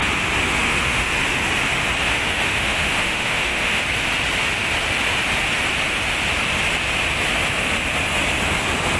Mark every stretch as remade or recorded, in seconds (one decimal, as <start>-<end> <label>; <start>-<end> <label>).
0.0-0.5 recorded; 0.5-1.1 remade; 1.1-2.1 recorded; 2.1-3.8 remade; 3.8-9.0 recorded